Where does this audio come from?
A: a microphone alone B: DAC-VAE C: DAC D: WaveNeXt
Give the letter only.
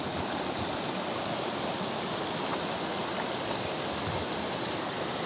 A